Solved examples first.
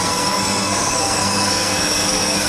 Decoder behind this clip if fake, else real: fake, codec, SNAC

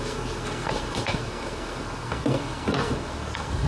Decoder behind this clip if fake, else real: fake, codec, SNAC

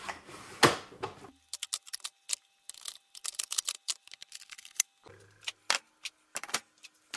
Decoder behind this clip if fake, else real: real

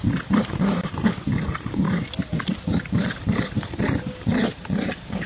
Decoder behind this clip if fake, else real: real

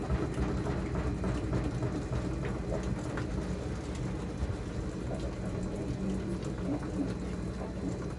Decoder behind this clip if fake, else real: real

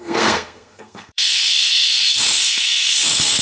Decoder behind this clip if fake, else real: fake, codec, SNAC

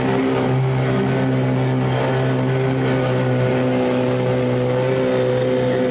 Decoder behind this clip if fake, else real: real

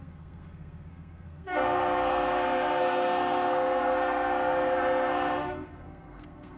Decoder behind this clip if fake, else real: fake, codec, SNAC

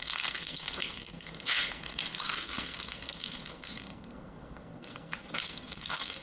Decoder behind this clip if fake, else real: fake, codec, SNAC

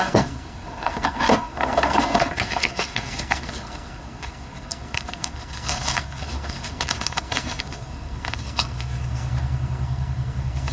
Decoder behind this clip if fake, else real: fake, codec, SNAC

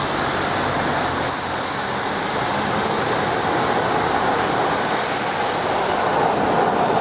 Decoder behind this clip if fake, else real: real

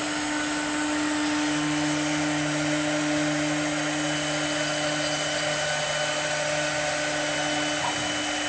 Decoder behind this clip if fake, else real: real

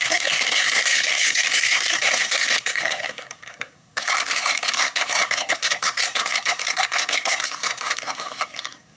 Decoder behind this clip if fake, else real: fake, codec, SNAC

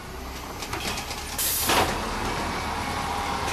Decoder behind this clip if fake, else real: real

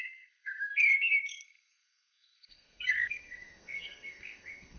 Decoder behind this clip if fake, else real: fake, codec, SNAC